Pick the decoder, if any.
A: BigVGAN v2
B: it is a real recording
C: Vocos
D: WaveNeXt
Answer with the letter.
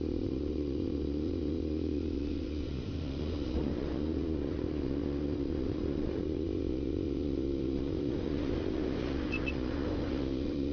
C